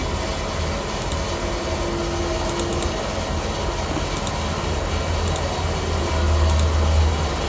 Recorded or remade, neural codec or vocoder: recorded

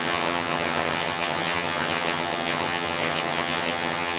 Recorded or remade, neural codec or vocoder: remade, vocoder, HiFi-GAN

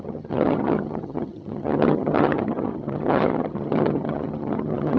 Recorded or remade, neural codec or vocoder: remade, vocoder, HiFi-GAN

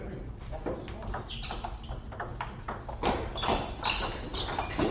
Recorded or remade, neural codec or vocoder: recorded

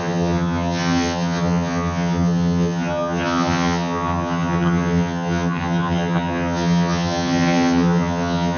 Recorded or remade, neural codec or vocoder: remade, vocoder, HiFi-GAN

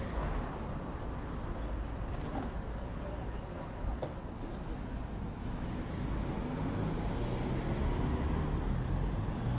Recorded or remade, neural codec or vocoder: recorded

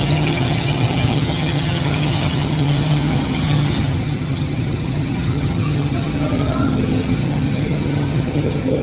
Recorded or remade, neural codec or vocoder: remade, vocoder, HiFi-GAN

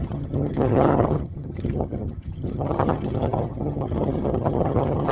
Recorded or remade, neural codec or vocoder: remade, vocoder, HiFi-GAN